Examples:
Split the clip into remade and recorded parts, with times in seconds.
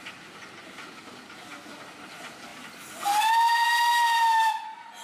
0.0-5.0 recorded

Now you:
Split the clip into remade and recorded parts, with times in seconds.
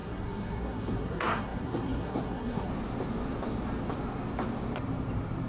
0.0-2.7 remade; 2.7-5.5 recorded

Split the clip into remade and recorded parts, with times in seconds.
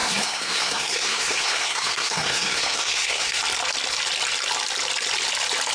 0.0-3.4 remade; 3.4-5.7 recorded